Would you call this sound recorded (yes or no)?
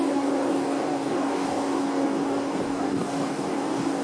no